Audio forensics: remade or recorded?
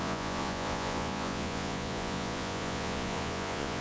remade